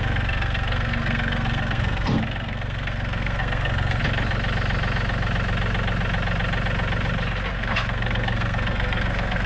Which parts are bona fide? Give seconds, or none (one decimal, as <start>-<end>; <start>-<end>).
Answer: 4.0-7.5